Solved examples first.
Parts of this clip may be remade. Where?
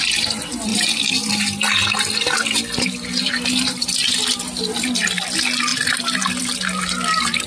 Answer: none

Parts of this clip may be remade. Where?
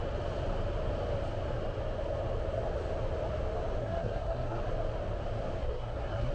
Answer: 3.8-4.6 (codec, SNAC); 5.6-6.3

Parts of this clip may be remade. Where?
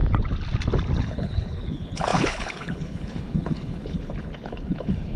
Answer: 1.0-5.2 (codec, HILCodec)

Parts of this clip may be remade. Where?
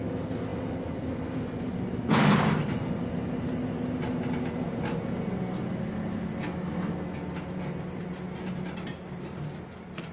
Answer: none